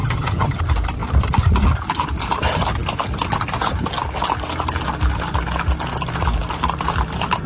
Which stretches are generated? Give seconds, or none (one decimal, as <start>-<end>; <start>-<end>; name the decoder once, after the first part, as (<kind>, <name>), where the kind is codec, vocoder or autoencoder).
0.0-0.6 (vocoder, HiFi-GAN)